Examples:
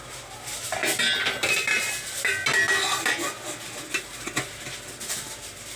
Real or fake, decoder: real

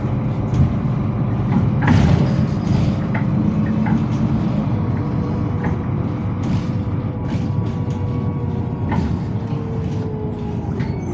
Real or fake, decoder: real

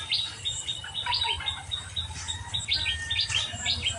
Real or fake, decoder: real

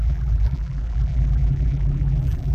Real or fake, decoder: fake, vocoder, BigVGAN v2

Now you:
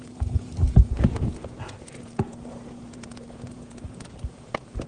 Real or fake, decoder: fake, vocoder, Vocos